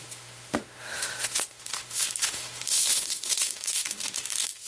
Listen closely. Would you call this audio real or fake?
fake